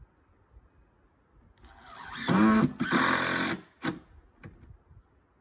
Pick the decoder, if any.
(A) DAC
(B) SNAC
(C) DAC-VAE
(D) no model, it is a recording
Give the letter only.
D